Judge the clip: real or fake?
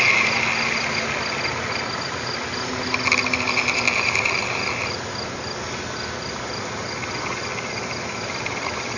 real